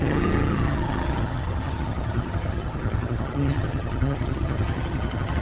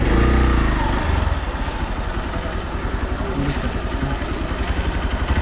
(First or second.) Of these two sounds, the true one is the second